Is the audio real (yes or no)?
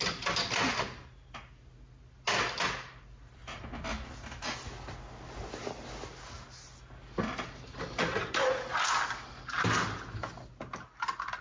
yes